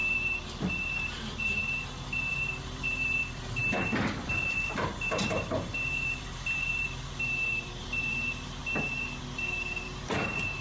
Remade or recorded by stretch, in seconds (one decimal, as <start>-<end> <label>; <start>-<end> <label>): 0.0-1.6 remade; 1.6-2.3 recorded; 2.3-3.6 remade; 3.6-4.2 recorded; 4.2-8.6 remade; 8.6-9.2 recorded; 9.2-10.6 remade